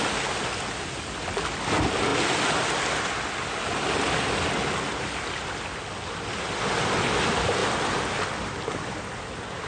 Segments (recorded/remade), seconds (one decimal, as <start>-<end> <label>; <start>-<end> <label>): 0.0-9.7 recorded